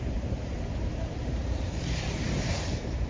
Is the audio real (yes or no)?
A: no